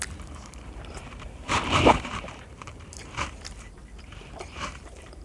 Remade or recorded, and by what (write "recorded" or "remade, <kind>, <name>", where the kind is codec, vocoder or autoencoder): remade, vocoder, BigVGAN v2